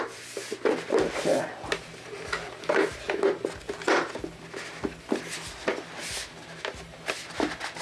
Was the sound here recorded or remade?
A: recorded